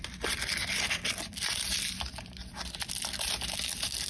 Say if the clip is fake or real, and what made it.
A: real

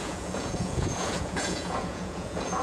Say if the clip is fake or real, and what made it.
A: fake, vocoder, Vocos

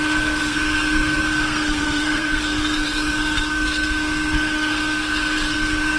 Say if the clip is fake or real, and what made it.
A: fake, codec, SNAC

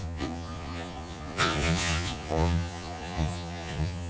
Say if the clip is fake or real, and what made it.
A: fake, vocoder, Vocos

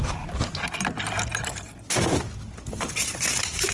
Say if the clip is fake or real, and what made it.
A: real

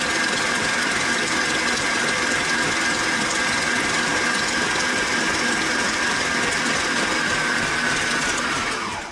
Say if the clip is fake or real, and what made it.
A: fake, vocoder, BigVGAN v2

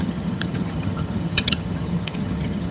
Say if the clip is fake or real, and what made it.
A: fake, vocoder, HiFi-GAN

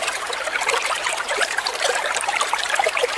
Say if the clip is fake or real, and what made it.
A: fake, vocoder, BigVGAN v2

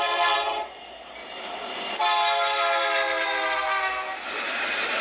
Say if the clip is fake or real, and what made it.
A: real